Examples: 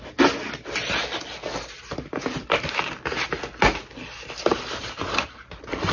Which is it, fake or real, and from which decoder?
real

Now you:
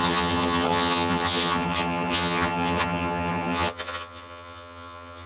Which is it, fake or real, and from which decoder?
fake, vocoder, HiFi-GAN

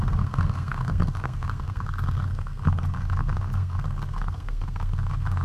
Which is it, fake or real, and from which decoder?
fake, codec, SNAC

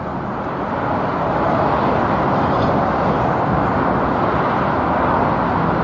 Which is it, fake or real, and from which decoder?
real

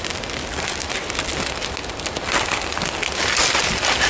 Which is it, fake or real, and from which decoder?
real